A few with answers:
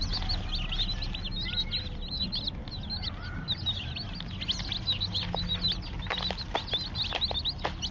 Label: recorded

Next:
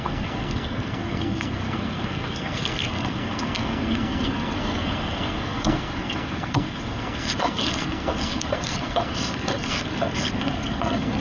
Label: remade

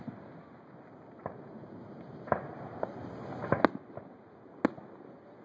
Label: recorded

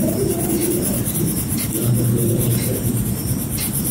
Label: remade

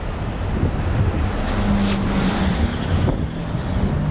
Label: recorded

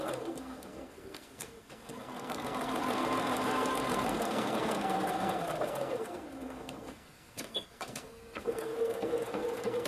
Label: remade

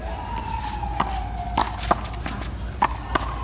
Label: recorded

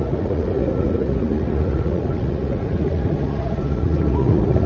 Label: remade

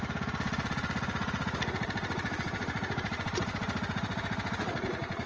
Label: remade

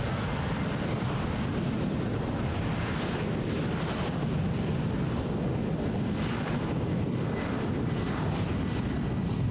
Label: recorded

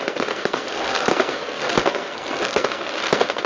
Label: remade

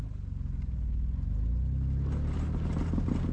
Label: recorded